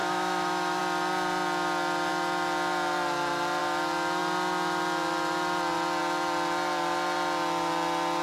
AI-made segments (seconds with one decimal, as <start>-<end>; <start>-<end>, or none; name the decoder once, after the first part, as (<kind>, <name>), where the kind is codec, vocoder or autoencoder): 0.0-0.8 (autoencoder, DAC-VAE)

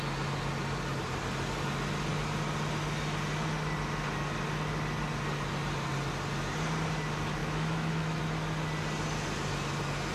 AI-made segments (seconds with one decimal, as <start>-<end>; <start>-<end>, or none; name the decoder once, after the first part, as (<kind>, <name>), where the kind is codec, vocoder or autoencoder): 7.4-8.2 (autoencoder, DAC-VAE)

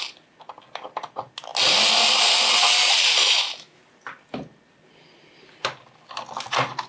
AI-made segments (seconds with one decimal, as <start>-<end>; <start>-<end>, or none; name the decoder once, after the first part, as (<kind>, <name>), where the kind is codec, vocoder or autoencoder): 3.2-3.8 (autoencoder, DAC-VAE)

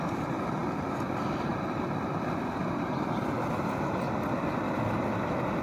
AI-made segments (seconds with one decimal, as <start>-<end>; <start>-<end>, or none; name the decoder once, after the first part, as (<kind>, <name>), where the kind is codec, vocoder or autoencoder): none

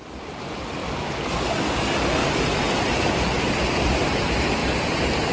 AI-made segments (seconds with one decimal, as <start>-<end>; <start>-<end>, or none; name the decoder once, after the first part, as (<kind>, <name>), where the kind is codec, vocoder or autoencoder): none